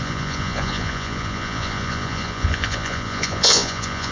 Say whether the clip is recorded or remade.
remade